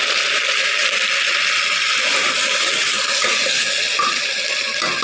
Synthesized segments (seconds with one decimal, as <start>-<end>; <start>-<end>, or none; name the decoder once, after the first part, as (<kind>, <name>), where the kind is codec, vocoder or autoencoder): none